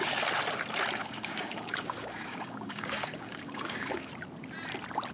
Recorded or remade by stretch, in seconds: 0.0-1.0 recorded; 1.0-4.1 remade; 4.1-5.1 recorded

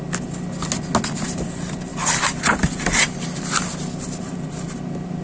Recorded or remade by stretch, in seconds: 0.0-1.9 recorded; 1.9-3.6 remade; 3.6-4.2 recorded; 4.2-4.8 remade; 4.8-5.2 recorded

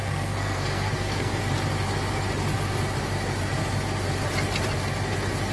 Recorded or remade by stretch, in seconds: 0.0-1.4 remade; 1.4-5.5 recorded